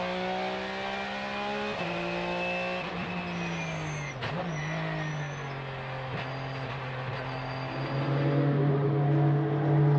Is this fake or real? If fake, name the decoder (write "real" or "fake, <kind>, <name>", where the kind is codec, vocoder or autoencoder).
real